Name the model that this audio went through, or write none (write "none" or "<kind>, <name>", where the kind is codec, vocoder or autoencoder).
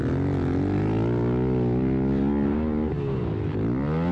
none